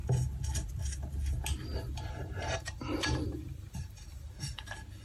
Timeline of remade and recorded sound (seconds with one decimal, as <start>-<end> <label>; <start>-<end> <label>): 0.0-1.7 recorded; 1.7-4.6 remade; 4.6-5.0 recorded